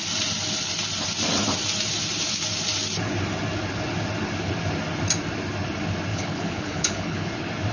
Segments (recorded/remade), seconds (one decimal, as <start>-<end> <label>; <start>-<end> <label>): 0.0-6.1 recorded; 6.1-7.3 remade; 7.3-7.7 recorded